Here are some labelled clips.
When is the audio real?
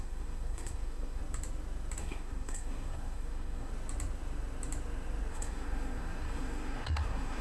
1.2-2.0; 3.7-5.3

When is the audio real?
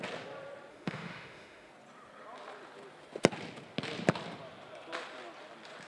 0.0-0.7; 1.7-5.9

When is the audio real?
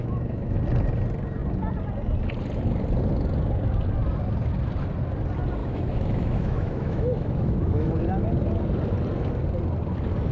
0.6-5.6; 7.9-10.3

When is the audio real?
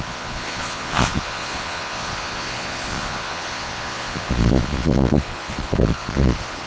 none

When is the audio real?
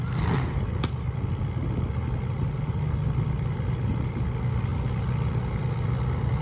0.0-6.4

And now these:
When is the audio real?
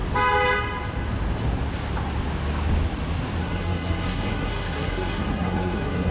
0.0-3.4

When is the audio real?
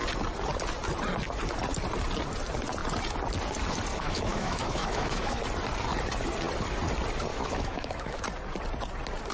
0.0-3.9; 5.4-7.3; 8.2-9.3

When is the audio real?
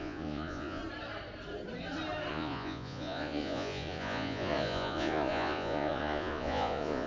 0.8-2.3